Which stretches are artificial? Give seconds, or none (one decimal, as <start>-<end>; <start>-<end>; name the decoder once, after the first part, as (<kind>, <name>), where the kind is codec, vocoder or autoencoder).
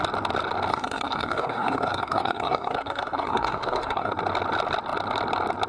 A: 0.7-4.1 (codec, SNAC)